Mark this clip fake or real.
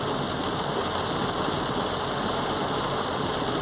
real